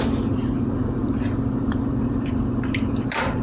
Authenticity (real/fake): fake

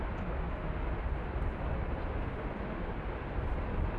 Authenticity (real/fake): real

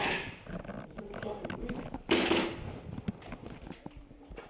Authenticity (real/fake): real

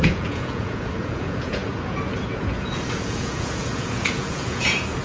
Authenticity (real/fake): fake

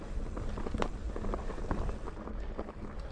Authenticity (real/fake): real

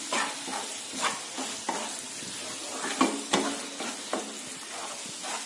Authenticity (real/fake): real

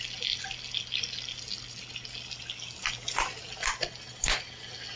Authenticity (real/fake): real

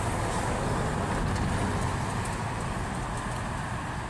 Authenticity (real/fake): real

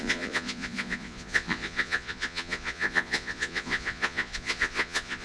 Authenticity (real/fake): fake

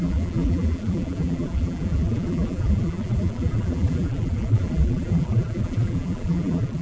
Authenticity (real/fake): fake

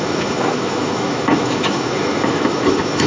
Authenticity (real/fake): fake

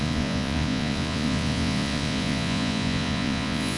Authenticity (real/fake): fake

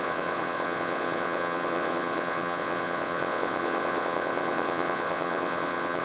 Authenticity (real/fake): fake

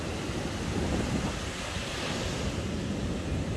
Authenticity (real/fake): real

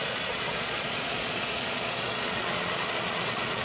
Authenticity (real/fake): fake